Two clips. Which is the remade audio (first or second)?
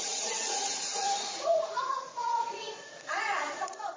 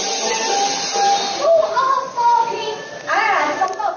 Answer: first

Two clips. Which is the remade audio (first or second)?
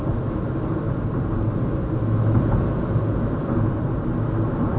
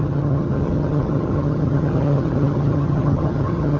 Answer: second